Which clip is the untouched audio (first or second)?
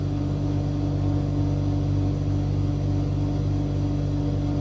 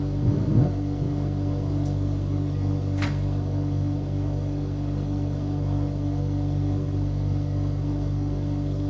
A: first